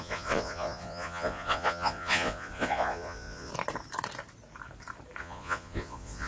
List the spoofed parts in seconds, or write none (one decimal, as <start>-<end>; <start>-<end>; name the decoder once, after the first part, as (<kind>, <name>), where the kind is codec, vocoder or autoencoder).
0.0-3.5 (vocoder, Vocos); 5.2-6.3